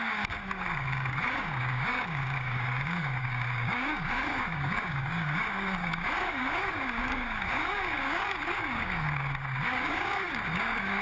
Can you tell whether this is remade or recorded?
remade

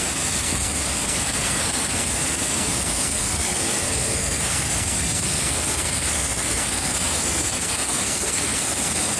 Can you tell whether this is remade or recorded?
remade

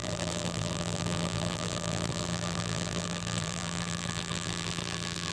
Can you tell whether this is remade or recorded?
remade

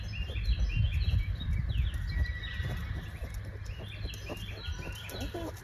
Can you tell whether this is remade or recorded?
recorded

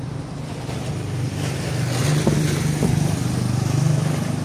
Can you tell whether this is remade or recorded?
remade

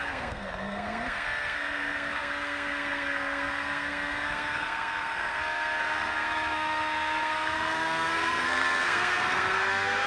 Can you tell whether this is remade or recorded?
remade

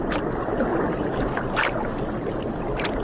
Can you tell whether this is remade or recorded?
recorded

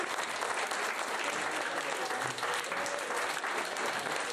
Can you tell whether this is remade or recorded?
recorded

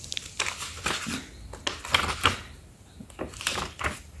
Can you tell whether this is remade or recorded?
recorded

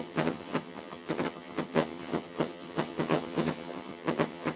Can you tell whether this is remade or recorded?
remade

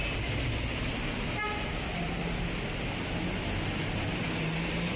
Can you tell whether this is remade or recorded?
recorded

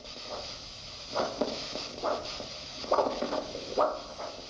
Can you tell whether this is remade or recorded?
remade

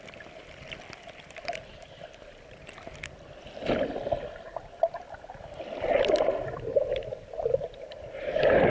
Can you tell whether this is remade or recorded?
remade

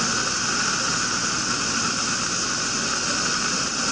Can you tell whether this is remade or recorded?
recorded